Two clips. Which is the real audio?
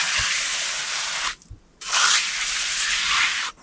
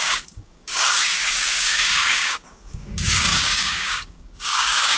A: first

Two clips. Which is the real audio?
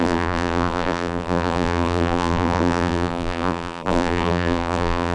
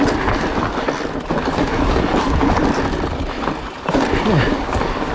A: second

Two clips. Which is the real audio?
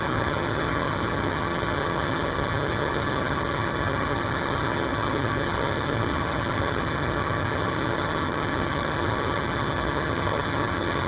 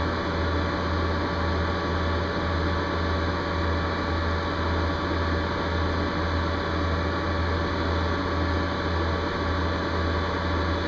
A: second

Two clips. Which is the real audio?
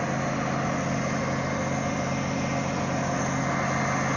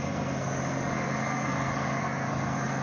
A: first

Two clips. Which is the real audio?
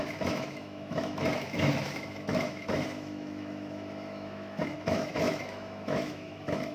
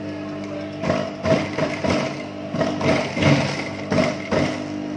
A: second